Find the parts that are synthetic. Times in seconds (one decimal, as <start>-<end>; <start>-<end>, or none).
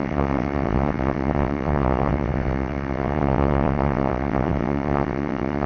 0.0-5.7